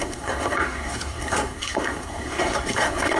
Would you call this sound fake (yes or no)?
yes